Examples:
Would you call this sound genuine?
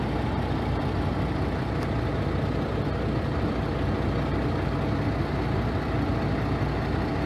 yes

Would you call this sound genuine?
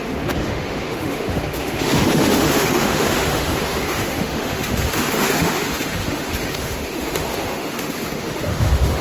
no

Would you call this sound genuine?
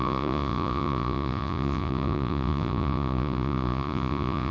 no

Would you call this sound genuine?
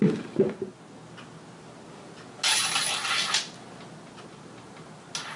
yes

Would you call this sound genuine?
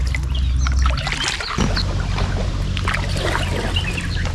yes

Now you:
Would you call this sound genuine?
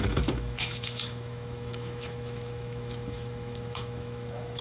no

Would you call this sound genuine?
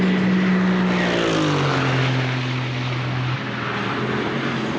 yes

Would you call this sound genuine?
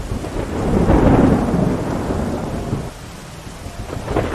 yes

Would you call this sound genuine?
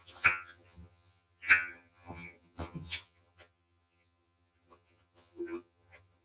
no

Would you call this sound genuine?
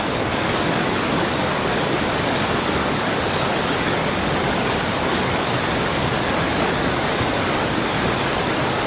no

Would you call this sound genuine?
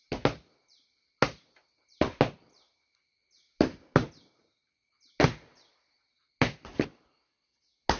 yes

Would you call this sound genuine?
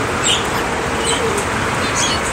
yes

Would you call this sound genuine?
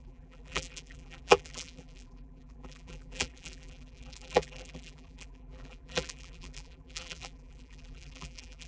no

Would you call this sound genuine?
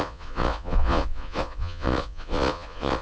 no